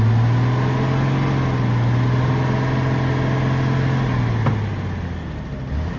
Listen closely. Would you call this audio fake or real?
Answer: real